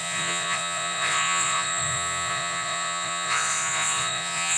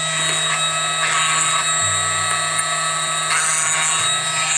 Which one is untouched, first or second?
second